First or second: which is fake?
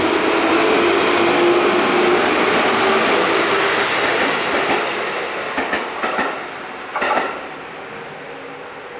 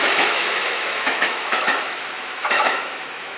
second